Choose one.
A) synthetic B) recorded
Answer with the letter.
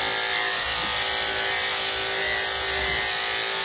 B